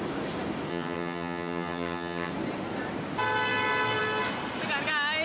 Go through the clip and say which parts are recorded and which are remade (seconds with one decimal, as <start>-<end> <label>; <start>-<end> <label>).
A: 0.0-0.7 recorded; 0.7-2.3 remade; 2.3-5.2 recorded